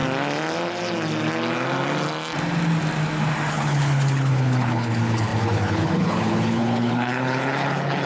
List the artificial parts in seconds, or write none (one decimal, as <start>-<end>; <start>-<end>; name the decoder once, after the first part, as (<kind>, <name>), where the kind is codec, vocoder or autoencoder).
3.5-8.1 (codec, HILCodec)